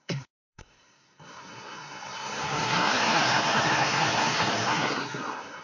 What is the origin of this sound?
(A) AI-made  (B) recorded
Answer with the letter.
A